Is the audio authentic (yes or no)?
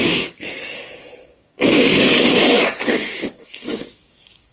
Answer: no